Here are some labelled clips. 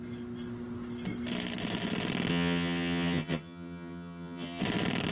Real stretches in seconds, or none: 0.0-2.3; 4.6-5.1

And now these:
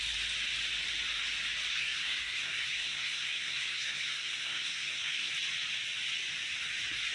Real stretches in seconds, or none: 0.0-1.7; 5.3-7.1

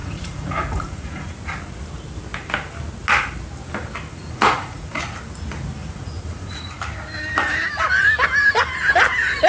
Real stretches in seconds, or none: 1.3-4.1; 5.0-5.8; 6.8-9.5